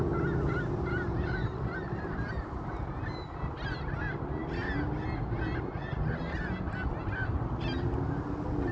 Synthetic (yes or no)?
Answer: no